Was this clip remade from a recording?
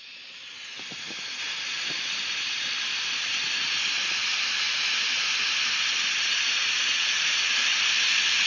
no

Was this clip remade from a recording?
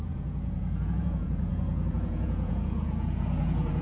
yes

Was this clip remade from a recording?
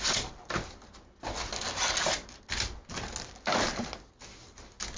no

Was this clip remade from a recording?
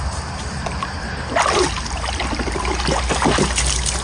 no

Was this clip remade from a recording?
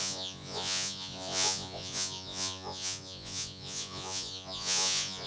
yes